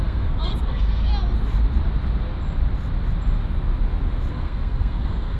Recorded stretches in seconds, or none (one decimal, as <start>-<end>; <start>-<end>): 1.1-4.3